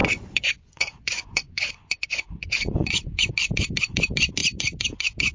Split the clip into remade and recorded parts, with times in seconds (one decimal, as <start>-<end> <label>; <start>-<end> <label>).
0.0-3.2 remade; 3.2-5.3 recorded